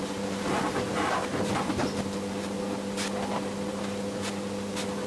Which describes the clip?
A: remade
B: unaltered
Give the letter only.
B